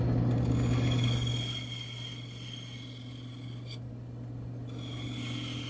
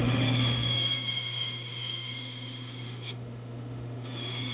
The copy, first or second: second